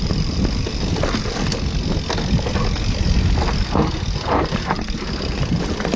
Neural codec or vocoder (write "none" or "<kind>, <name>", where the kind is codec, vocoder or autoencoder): none